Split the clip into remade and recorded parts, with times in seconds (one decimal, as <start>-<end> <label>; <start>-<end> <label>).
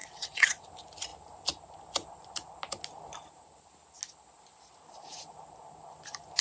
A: 0.0-0.6 remade; 0.6-6.4 recorded